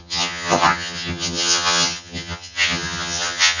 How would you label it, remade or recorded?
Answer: remade